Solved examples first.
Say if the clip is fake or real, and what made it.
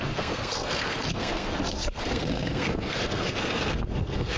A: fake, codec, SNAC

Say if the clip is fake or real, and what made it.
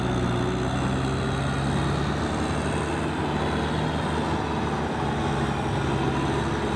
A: real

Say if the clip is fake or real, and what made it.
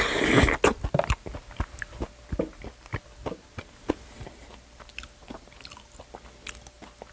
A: real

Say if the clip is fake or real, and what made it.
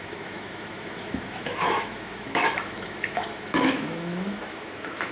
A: fake, autoencoder, DAC-VAE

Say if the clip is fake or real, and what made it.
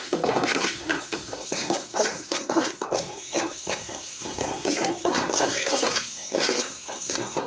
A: fake, codec, SNAC